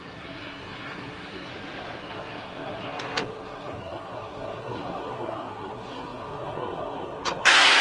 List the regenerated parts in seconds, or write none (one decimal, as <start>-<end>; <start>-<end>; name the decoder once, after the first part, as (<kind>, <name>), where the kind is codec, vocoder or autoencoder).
0.0-1.5 (codec, SNAC); 2.0-7.8